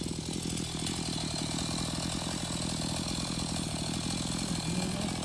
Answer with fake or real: real